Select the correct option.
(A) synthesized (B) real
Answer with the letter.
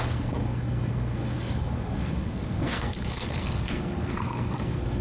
A